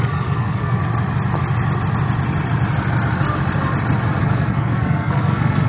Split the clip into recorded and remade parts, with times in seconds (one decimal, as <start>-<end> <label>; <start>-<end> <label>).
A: 0.0-0.8 remade; 0.8-4.2 recorded; 4.2-5.7 remade